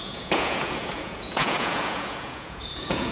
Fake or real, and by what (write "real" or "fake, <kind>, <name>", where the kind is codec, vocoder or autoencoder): fake, vocoder, Vocos